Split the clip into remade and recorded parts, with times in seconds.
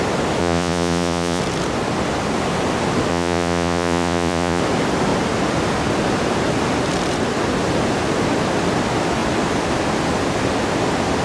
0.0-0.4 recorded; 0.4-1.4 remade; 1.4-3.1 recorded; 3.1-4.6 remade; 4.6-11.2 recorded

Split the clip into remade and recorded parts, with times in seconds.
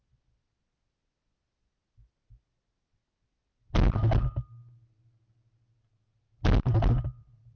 0.0-7.6 recorded